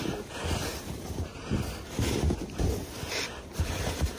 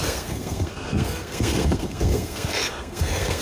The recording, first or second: first